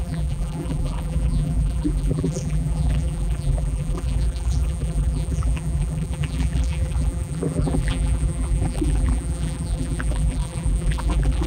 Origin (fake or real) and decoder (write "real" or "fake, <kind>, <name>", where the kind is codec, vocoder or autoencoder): fake, vocoder, BigVGAN v2